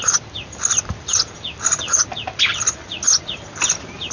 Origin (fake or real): real